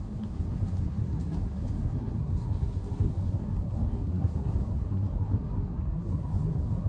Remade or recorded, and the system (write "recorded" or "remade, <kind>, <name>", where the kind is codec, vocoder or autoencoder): remade, codec, SNAC